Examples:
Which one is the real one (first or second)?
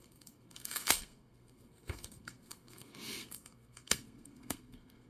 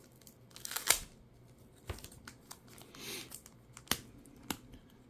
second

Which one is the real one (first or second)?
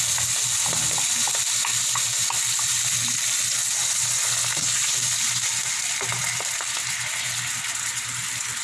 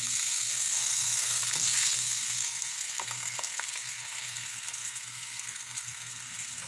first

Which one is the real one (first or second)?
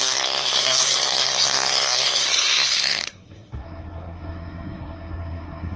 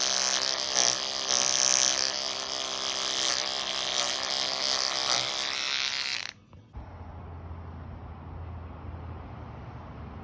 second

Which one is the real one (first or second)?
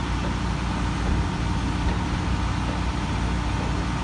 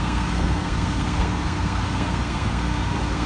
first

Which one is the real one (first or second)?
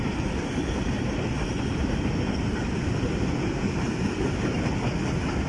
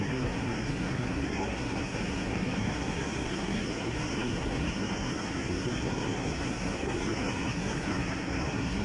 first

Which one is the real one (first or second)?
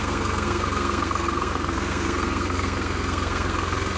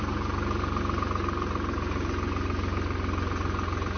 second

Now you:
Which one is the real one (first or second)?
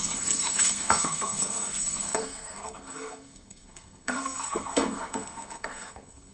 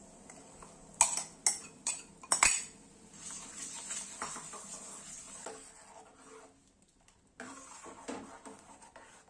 second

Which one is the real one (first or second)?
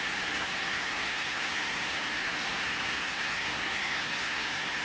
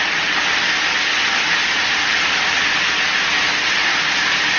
second